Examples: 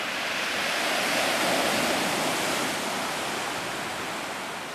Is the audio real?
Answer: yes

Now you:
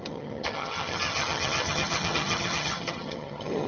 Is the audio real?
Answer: no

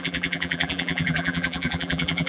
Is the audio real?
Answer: no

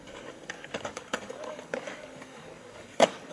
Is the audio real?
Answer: no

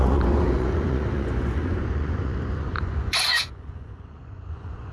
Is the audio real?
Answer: no